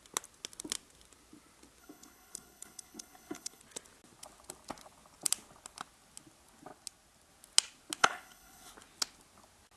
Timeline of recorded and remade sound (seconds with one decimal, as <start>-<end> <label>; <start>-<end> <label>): 0.0-1.8 recorded; 1.8-3.6 remade; 3.6-8.0 recorded; 8.0-8.7 remade; 8.7-9.8 recorded